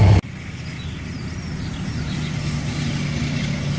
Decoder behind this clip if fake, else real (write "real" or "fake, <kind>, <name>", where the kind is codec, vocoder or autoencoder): real